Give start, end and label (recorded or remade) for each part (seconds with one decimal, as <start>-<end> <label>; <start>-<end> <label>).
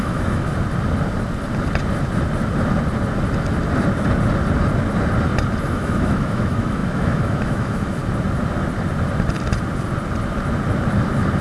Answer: 0.0-0.5 remade; 0.5-5.7 recorded; 5.7-8.0 remade; 8.0-11.4 recorded